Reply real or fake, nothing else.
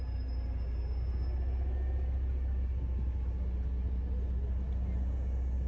real